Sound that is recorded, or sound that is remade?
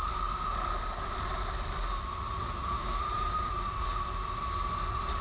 recorded